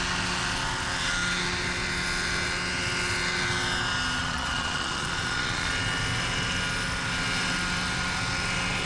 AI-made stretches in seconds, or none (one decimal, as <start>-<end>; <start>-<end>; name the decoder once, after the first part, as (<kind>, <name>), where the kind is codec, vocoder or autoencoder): 4.2-5.7 (vocoder, Vocos)